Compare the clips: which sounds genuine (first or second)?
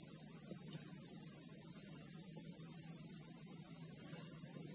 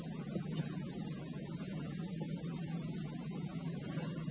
first